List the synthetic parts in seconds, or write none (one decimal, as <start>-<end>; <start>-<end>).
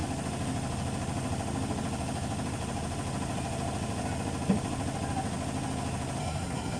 6.2-6.8